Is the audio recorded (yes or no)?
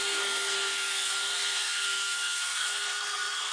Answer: no